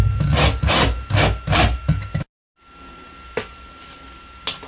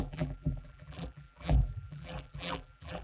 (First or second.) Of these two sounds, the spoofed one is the second